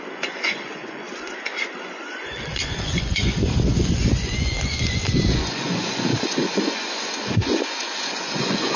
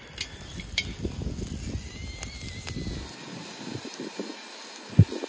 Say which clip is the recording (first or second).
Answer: second